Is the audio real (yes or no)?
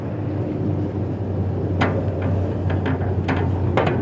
yes